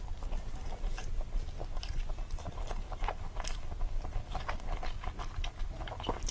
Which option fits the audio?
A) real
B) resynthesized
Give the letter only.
A